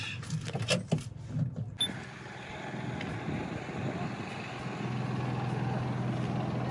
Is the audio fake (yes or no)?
no